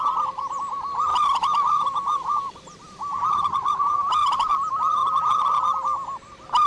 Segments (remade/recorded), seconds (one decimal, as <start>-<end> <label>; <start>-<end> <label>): 0.0-1.1 recorded; 1.1-4.5 remade; 4.5-6.7 recorded